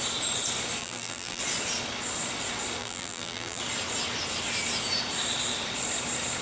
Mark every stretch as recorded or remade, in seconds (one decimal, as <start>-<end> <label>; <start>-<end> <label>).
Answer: 0.0-0.8 recorded; 0.8-1.4 remade; 1.4-2.8 recorded; 2.8-3.6 remade; 3.6-6.4 recorded